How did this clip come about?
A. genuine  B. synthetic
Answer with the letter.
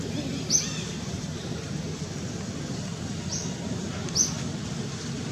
A